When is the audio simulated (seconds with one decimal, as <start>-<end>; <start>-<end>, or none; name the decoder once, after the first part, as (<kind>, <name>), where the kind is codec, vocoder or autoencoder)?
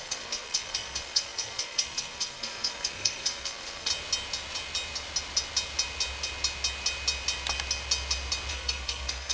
0.0-3.9 (codec, SNAC); 8.5-9.3